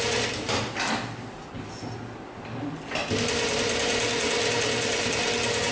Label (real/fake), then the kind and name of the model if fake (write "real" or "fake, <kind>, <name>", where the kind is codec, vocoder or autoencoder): real